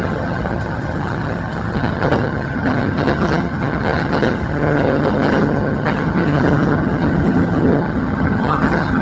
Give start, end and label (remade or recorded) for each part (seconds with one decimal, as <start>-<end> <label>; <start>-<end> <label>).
0.0-9.0 remade